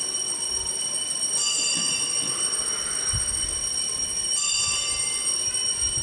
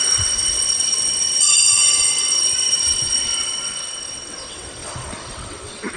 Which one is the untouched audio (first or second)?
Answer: first